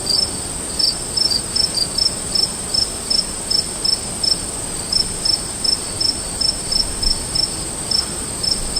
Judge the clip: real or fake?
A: real